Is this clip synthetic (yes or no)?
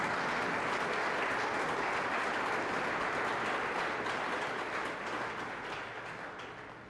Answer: no